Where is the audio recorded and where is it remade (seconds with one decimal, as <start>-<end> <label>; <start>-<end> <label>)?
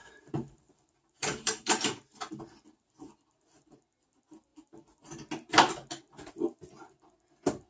0.0-2.4 remade; 2.4-7.7 recorded